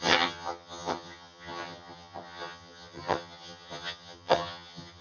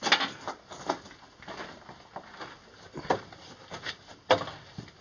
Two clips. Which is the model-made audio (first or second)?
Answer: first